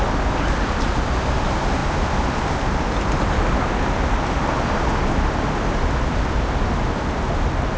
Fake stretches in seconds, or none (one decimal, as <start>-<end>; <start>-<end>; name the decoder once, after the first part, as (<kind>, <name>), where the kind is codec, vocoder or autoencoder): none